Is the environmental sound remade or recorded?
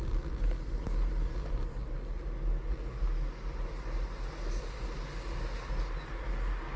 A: recorded